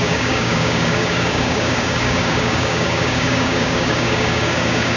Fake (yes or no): yes